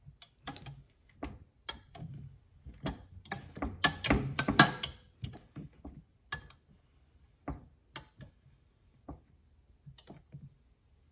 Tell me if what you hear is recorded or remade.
recorded